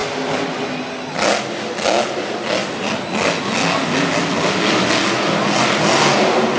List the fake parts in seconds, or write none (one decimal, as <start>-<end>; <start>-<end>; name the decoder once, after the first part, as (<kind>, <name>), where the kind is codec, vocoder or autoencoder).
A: none